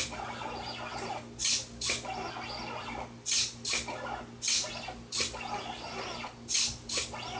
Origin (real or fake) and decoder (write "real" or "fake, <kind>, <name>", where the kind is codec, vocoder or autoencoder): real